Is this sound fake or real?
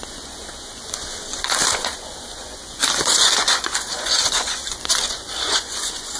fake